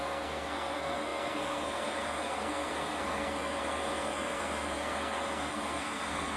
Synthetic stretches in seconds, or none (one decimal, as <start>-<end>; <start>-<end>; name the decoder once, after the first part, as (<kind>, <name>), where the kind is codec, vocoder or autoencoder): 0.0-6.4 (codec, SNAC)